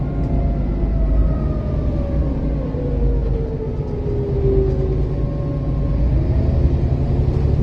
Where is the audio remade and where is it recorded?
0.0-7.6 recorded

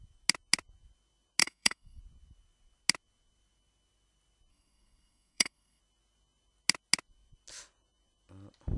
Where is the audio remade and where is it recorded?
0.0-1.4 recorded; 1.4-2.0 remade; 2.0-4.5 recorded; 4.5-5.8 remade; 5.8-8.8 recorded

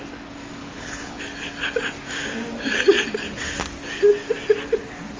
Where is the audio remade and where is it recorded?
0.0-0.6 recorded; 0.6-1.2 remade; 1.2-5.2 recorded

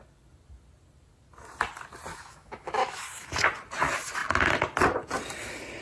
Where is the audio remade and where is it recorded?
0.0-2.1 recorded; 2.1-3.3 remade; 3.3-5.8 recorded

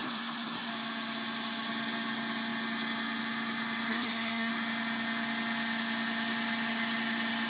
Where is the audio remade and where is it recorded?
0.0-0.7 remade; 0.7-3.9 recorded; 3.9-4.5 remade; 4.5-7.5 recorded